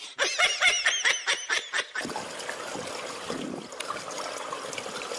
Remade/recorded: recorded